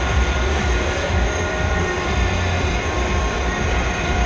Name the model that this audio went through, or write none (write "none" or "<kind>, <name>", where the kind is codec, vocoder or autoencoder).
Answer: vocoder, BigVGAN v2